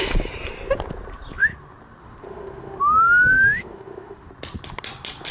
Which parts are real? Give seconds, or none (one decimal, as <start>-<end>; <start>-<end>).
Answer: 0.0-2.0; 4.3-5.3